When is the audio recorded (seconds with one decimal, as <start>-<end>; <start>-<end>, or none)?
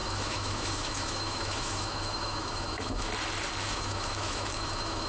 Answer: 3.1-3.6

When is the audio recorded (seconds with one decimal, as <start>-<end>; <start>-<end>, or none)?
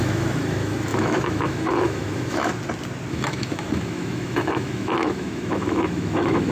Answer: 2.5-3.1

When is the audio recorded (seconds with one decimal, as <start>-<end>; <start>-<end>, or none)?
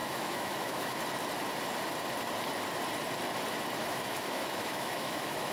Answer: 1.0-3.8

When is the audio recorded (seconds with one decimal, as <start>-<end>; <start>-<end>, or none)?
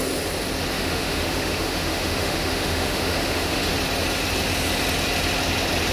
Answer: 0.0-0.7; 3.7-5.9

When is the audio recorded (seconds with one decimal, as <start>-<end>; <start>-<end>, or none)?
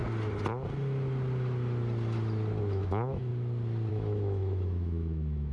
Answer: 0.0-2.6; 3.3-3.9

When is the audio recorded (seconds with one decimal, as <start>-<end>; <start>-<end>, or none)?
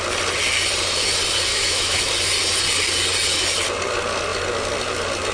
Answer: 0.0-1.5; 2.0-5.3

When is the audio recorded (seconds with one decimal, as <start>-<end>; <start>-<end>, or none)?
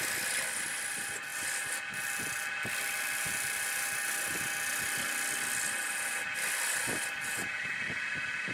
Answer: 0.0-8.5